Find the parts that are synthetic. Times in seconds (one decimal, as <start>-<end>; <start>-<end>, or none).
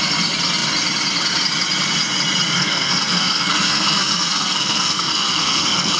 2.6-6.0